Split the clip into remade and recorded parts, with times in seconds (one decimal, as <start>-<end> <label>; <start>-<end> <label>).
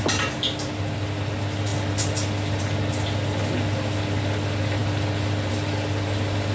0.0-6.5 recorded